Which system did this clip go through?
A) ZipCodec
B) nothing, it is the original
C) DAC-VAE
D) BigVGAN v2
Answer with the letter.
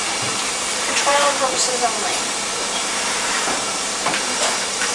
D